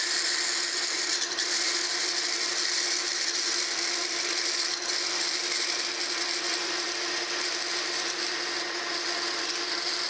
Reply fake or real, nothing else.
real